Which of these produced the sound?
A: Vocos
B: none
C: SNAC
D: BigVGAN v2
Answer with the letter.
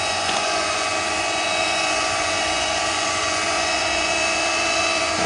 A